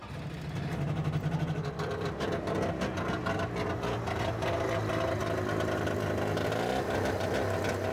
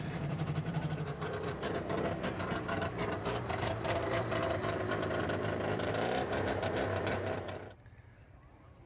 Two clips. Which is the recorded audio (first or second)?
first